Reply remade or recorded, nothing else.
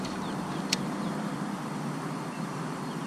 remade